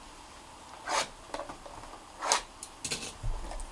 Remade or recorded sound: recorded